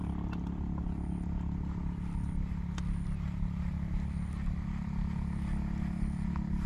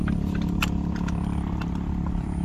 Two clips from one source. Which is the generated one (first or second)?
second